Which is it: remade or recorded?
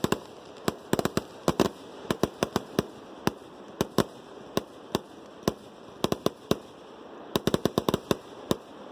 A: recorded